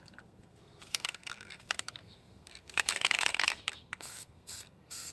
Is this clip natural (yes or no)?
no